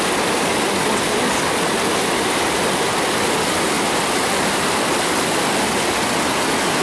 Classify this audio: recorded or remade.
recorded